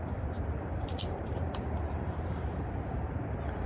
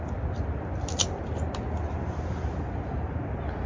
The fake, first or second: first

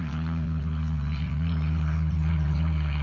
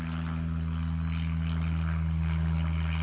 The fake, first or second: first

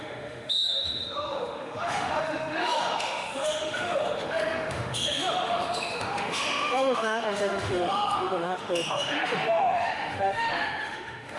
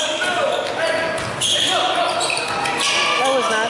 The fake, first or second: first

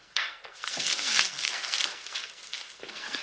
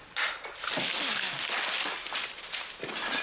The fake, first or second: first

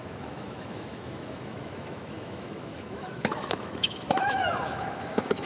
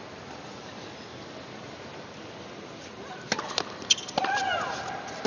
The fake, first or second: first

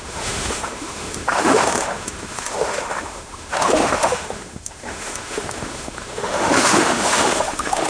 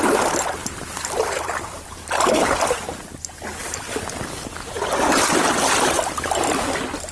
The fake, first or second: first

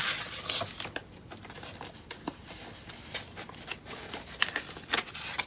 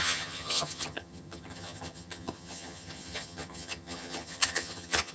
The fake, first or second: second